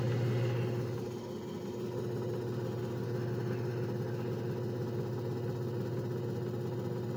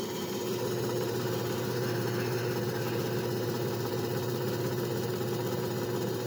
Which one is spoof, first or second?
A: second